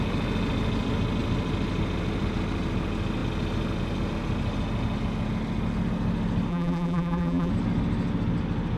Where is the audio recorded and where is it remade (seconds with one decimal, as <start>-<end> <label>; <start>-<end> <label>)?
0.0-6.5 recorded; 6.5-7.5 remade; 7.5-8.8 recorded